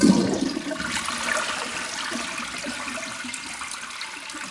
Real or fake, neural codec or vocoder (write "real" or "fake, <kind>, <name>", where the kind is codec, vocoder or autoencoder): real